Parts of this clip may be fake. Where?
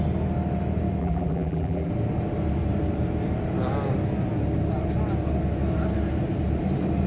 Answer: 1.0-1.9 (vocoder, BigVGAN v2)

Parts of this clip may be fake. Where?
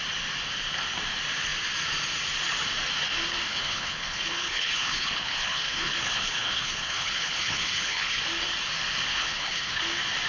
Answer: 3.5-8.2 (codec, HILCodec); 9.1-9.8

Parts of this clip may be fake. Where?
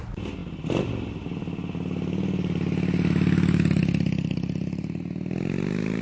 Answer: 3.8-5.0 (vocoder, BigVGAN v2)